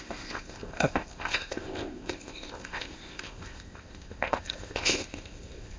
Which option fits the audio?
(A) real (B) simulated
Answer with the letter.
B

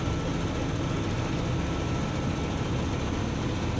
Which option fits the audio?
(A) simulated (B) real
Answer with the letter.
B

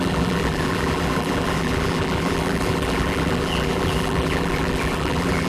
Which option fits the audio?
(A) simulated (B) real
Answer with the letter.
A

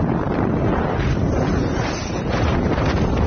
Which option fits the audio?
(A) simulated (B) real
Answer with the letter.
A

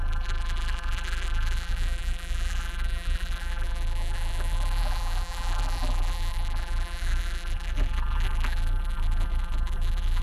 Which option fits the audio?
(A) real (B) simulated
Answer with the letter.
B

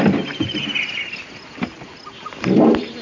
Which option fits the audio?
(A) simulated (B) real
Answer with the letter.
B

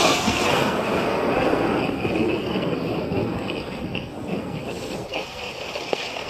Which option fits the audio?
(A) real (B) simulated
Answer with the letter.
B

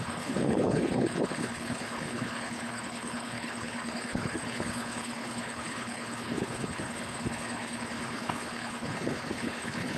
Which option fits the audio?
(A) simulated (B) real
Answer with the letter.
A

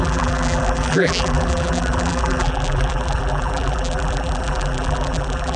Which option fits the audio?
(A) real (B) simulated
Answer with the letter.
B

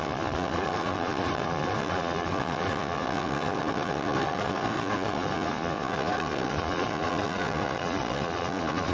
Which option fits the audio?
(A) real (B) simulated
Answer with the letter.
B